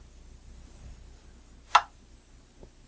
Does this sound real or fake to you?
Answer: real